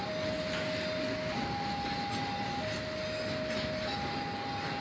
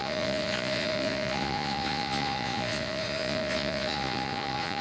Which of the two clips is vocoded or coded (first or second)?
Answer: second